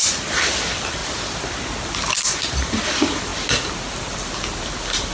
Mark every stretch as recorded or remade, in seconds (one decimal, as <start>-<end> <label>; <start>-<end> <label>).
0.0-1.0 remade; 1.0-2.4 recorded; 2.4-3.3 remade; 3.3-3.9 recorded; 3.9-5.1 remade